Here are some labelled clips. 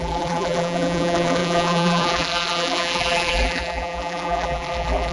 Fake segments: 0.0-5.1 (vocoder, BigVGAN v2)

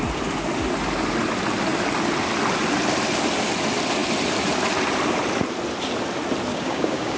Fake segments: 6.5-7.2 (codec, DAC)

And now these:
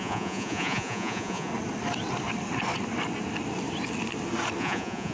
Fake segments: 0.0-1.5 (vocoder, Vocos); 4.6-5.1

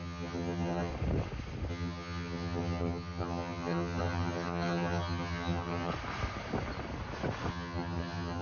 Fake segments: 0.0-0.9 (vocoder, HiFi-GAN); 1.7-5.9; 7.5-8.4